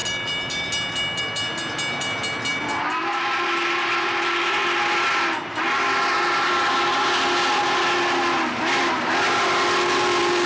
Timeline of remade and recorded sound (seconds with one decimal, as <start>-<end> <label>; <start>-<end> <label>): 0.0-10.5 recorded